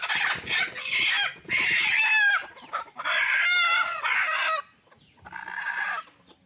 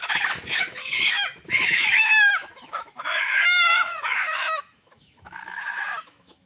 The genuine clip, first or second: first